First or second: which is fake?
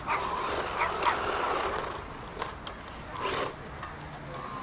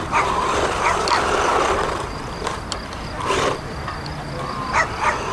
second